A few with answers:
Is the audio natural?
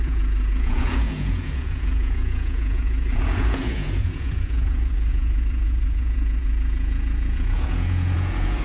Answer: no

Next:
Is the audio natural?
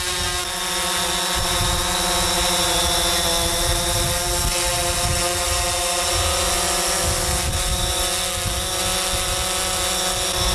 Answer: yes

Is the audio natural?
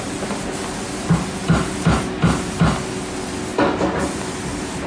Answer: yes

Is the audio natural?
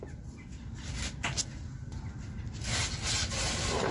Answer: yes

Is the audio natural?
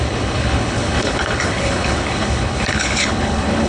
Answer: no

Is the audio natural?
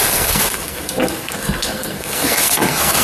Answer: no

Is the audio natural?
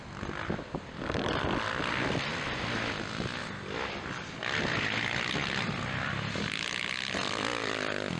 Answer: yes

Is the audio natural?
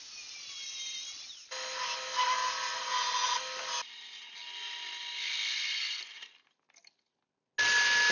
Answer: yes